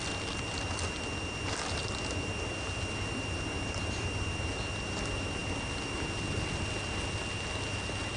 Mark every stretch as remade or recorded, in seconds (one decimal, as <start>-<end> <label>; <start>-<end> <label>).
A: 0.0-8.2 recorded